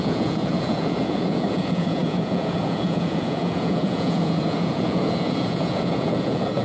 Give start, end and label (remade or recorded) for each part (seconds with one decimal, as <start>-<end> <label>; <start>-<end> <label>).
0.0-6.6 remade